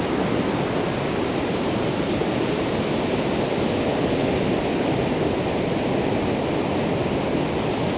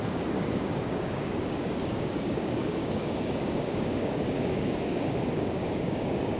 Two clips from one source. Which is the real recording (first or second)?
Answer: first